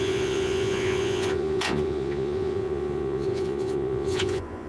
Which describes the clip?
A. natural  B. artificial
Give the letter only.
B